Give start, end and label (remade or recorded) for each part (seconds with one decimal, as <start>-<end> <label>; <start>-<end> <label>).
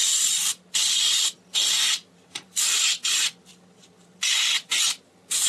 0.0-5.5 recorded